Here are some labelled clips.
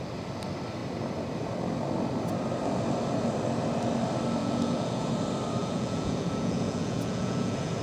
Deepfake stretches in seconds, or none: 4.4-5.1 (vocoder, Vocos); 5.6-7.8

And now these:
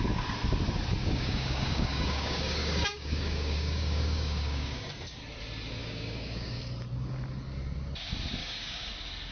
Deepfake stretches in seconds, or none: 1.0-4.9 (codec, DAC); 5.8-6.6; 8.4-8.9